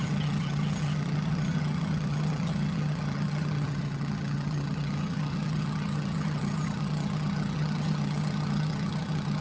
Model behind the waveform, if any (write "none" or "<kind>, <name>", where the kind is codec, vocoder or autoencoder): vocoder, HiFi-GAN